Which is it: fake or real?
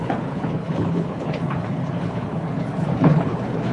fake